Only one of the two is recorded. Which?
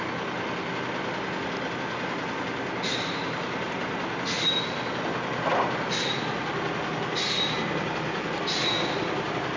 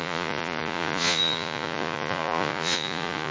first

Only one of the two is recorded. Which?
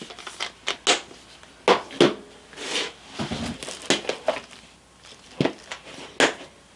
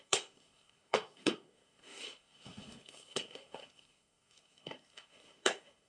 first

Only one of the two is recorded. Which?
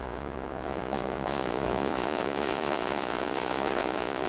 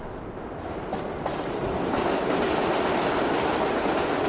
second